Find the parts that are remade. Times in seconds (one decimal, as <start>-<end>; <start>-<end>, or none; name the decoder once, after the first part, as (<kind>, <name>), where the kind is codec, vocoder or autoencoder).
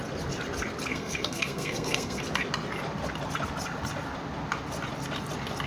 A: 0.9-2.2 (codec, SNAC)